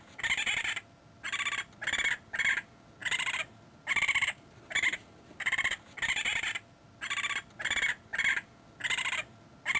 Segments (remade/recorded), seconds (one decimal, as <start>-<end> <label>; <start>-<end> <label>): 0.0-3.0 recorded; 3.0-6.9 remade; 6.9-9.8 recorded